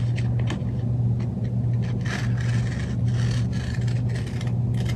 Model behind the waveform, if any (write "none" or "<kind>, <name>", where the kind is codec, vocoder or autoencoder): none